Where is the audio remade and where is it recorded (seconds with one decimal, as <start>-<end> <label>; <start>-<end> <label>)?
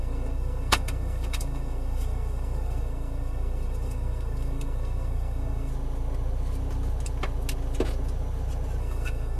0.0-5.7 remade; 5.7-8.8 recorded; 8.8-9.4 remade